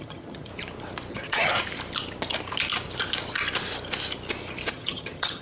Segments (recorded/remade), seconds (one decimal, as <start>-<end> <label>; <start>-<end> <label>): 0.0-0.5 remade; 0.5-1.1 recorded; 1.1-1.5 remade; 1.5-4.7 recorded; 4.7-5.4 remade